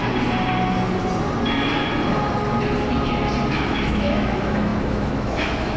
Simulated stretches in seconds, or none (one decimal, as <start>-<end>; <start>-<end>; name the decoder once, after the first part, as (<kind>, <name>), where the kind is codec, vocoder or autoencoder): 3.5-5.8 (autoencoder, DAC-VAE)